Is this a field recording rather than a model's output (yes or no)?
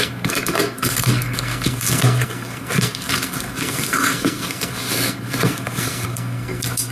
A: no